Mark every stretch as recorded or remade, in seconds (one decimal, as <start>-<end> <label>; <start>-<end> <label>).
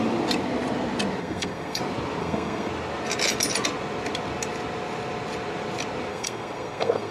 0.0-1.2 recorded; 1.2-1.8 remade; 1.8-2.2 recorded; 2.2-2.7 remade; 2.7-6.1 recorded; 6.1-7.1 remade